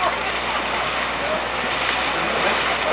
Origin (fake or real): real